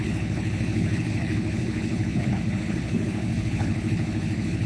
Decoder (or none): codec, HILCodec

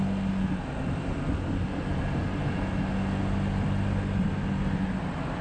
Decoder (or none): none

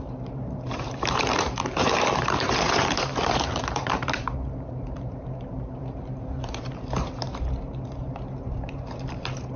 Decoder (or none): vocoder, BigVGAN v2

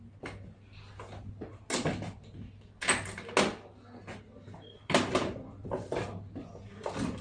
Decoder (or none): none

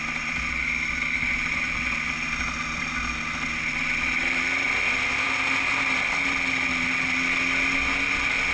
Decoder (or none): none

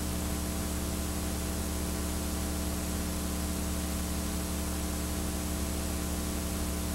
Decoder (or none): none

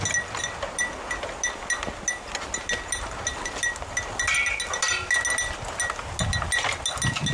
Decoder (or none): none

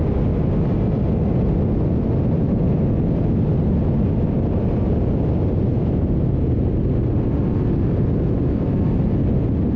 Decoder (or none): none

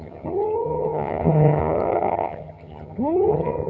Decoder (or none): vocoder, HiFi-GAN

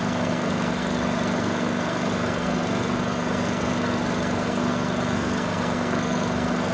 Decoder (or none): codec, SNAC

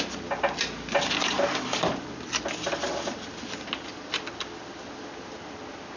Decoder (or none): none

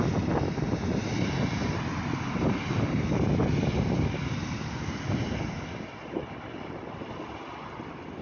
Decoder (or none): none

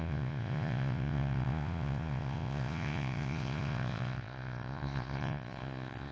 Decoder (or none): vocoder, Vocos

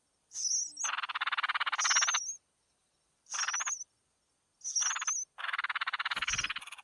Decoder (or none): none